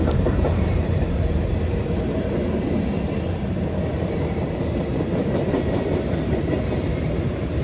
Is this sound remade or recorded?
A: remade